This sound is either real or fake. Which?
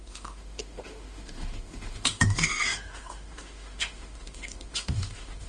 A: fake